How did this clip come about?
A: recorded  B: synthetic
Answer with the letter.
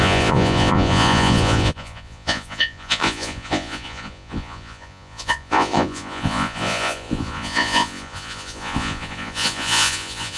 B